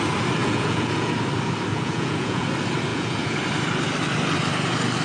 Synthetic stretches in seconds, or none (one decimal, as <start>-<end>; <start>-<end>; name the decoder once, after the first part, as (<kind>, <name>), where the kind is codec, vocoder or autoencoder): 0.4-1.1 (vocoder, Vocos); 1.7-2.4; 2.9-3.4